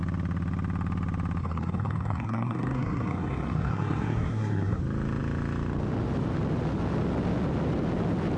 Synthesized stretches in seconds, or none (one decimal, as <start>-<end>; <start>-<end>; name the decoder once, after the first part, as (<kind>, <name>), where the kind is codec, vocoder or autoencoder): 1.4-4.8 (codec, SNAC)

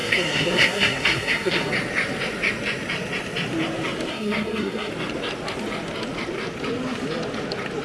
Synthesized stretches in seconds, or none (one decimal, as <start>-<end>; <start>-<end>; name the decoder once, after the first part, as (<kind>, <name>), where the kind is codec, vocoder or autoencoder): 0.0-1.7 (codec, SNAC); 4.1-4.9

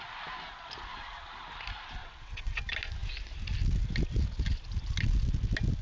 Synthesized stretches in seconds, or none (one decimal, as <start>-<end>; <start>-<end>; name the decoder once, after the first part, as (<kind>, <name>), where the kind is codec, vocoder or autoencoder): 2.0-2.6 (vocoder, WaveNeXt)